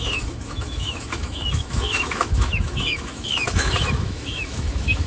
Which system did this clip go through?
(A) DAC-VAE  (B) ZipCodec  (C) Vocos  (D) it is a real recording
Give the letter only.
A